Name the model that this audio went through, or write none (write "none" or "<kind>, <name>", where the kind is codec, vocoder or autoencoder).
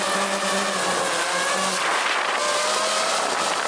none